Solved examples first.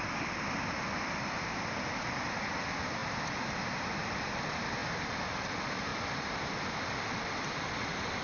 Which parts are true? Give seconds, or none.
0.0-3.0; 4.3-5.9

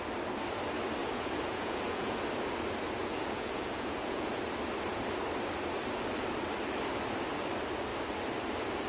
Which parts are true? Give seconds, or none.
0.0-1.0; 2.2-3.0; 4.3-8.9

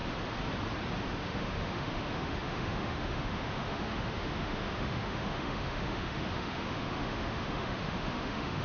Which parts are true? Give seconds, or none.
0.0-1.1

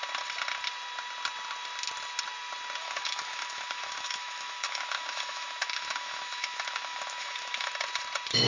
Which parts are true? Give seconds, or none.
0.0-2.8; 7.7-8.5

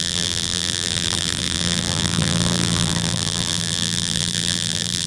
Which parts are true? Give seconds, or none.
none

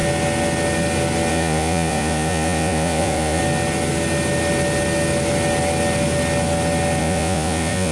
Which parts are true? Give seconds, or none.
0.0-1.3; 3.4-7.0

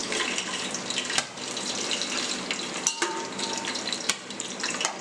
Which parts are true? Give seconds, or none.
none